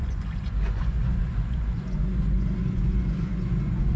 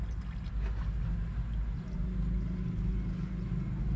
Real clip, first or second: second